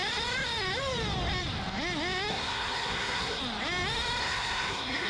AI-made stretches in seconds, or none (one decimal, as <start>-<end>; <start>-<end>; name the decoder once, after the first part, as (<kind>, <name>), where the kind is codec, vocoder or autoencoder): 2.3-3.4 (codec, SNAC); 4.2-5.1